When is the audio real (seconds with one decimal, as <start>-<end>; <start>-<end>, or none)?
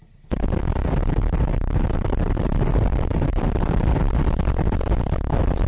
0.0-0.8; 4.2-5.7